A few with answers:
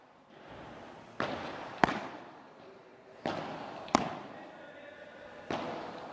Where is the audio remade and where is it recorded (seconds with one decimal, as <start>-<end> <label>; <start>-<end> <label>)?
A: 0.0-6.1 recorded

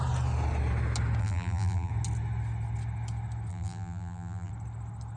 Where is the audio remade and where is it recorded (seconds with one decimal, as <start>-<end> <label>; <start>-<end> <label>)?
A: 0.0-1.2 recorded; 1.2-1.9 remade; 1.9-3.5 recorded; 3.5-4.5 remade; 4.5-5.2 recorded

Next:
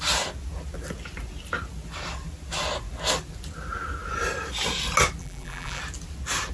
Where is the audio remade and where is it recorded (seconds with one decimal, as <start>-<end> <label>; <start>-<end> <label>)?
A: 0.0-5.2 recorded; 5.2-5.8 remade; 5.8-6.5 recorded

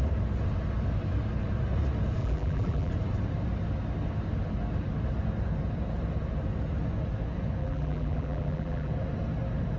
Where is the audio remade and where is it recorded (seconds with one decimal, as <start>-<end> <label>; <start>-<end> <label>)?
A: 0.0-2.2 recorded; 2.2-2.9 remade; 2.9-7.6 recorded; 7.6-8.9 remade; 8.9-9.8 recorded

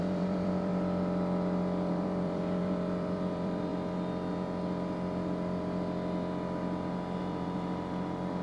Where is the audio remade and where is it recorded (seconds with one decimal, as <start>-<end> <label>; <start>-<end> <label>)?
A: 0.0-0.7 remade; 0.7-1.9 recorded; 1.9-3.7 remade; 3.7-7.2 recorded; 7.2-8.4 remade

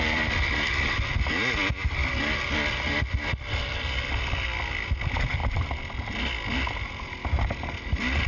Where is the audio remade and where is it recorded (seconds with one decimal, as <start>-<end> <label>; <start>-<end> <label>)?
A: 0.0-1.6 remade; 1.6-3.8 recorded; 3.8-5.4 remade; 5.4-6.7 recorded; 6.7-8.3 remade